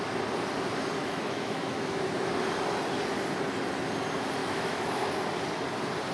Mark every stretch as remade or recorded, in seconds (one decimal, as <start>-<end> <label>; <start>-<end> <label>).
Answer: 0.0-1.0 recorded; 1.0-2.3 remade; 2.3-4.4 recorded; 4.4-5.1 remade; 5.1-6.1 recorded